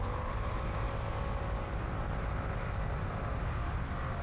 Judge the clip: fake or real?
real